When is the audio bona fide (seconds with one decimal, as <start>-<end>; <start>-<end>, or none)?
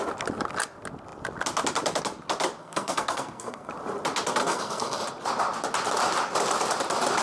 0.0-2.6; 3.7-4.4; 5.0-7.2